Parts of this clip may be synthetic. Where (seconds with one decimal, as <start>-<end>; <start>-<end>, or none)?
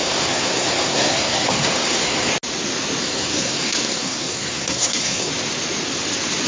0.0-2.3; 3.0-5.3